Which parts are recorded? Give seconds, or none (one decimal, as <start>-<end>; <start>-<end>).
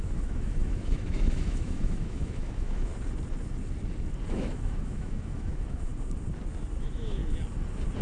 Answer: 2.9-4.3; 5.9-6.8; 7.2-8.0